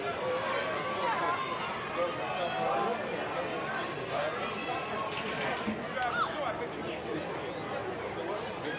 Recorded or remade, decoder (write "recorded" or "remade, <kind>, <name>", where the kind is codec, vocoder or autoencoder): recorded